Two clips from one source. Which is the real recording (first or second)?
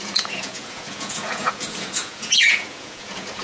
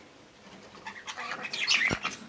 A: second